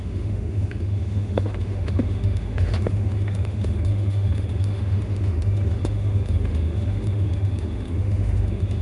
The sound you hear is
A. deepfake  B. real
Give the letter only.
A